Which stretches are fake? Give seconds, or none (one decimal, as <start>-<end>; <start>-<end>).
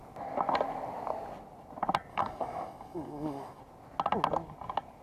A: 2.1-3.6